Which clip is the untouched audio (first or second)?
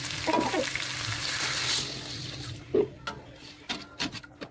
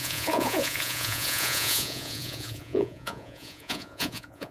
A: first